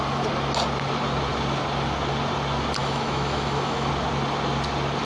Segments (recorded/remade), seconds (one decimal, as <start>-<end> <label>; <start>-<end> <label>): 0.0-2.8 recorded; 2.8-3.9 remade; 3.9-5.0 recorded

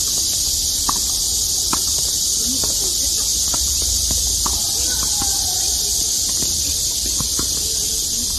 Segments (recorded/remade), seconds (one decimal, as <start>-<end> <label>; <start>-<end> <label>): 0.0-8.4 recorded

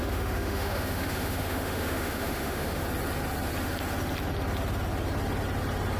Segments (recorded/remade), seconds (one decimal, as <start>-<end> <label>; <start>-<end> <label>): 0.0-2.8 remade; 2.8-6.0 recorded

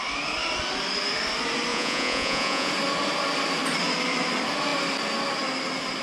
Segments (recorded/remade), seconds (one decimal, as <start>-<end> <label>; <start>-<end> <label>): 0.0-1.7 recorded; 1.7-2.7 remade; 2.7-6.0 recorded